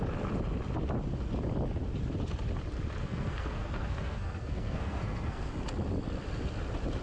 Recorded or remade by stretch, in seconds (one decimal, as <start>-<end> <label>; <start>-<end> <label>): 0.0-3.0 recorded; 3.0-5.5 remade; 5.5-7.0 recorded